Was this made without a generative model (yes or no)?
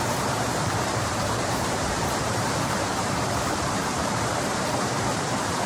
no